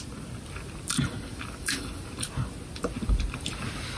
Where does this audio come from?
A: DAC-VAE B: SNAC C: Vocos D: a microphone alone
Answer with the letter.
D